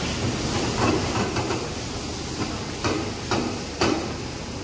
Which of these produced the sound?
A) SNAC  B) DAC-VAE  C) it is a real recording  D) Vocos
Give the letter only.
C